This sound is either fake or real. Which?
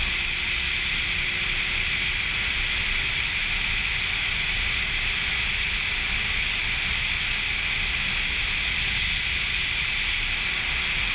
real